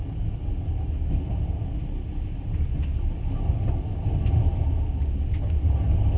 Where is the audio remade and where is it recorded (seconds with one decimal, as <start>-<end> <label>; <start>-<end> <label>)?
0.0-6.2 recorded